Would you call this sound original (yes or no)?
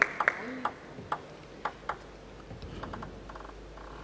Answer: yes